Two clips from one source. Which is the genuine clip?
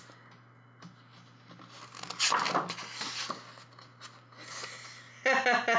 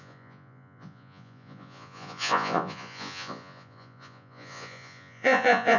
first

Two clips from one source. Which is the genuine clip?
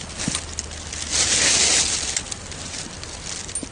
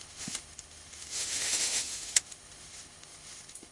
first